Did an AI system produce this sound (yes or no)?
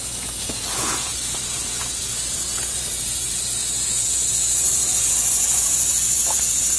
yes